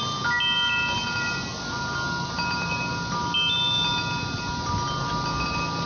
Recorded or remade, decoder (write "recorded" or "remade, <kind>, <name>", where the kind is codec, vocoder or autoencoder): recorded